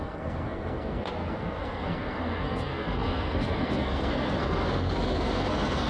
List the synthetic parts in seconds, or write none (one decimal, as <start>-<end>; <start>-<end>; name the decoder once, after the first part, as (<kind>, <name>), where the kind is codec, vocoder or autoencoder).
0.0-5.9 (codec, SNAC)